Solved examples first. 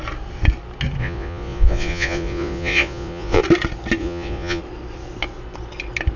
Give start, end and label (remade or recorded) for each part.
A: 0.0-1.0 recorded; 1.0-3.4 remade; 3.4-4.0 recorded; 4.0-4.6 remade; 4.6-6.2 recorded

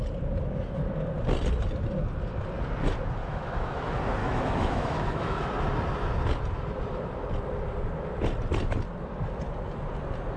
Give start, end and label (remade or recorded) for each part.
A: 0.0-3.2 recorded; 3.2-3.8 remade; 3.8-4.2 recorded; 4.2-5.5 remade; 5.5-10.4 recorded